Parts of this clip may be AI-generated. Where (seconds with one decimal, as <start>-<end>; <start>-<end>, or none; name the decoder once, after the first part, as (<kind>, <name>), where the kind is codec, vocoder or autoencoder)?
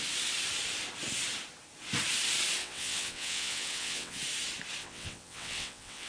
2.6-4.2 (vocoder, WaveNeXt); 4.8-6.1